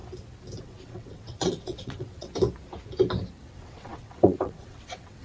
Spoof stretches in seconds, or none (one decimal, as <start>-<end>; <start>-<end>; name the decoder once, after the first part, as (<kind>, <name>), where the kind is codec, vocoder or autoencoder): 0.6-2.3 (vocoder, WaveNeXt); 3.4-5.2